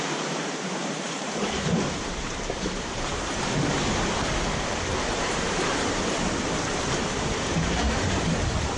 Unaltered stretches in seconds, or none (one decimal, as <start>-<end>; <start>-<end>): 3.8-5.1